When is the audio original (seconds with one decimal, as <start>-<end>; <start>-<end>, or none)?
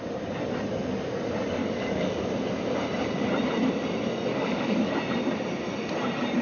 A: 0.0-1.6; 2.3-4.3; 4.9-6.4